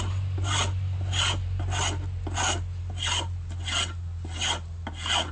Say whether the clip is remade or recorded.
recorded